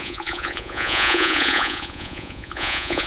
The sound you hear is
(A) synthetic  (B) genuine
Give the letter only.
A